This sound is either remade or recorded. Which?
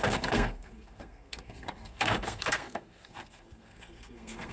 remade